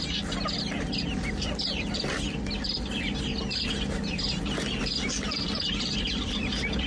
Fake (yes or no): no